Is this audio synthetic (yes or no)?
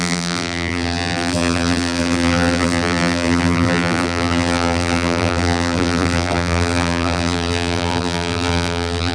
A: yes